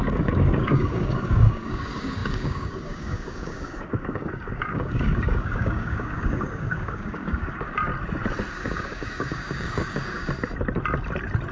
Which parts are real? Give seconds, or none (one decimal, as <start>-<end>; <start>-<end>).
7.9-8.5; 10.2-11.5

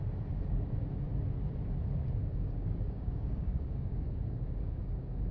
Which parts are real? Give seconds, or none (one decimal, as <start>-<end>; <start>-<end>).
0.0-1.9

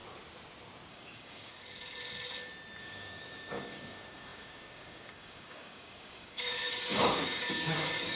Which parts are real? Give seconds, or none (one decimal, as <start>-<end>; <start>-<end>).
0.0-0.9; 1.5-2.8

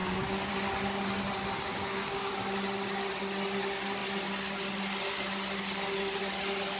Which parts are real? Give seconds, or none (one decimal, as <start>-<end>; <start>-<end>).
0.5-1.7; 2.3-6.8